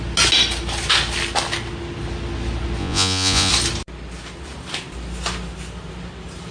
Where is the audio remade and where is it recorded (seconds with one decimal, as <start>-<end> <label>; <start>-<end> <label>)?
0.0-2.8 recorded; 2.8-3.5 remade; 3.5-6.5 recorded